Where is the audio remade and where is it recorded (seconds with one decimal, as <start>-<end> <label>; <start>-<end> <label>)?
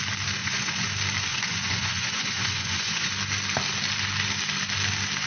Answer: 0.0-0.4 recorded; 0.4-0.9 remade; 0.9-1.3 recorded; 1.3-3.1 remade; 3.1-5.3 recorded